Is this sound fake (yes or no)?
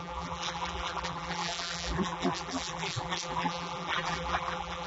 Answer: yes